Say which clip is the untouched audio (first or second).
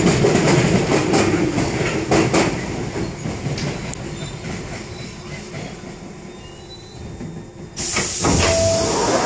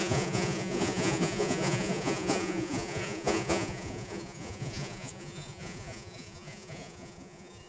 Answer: first